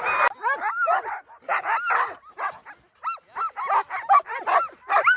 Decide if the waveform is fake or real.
real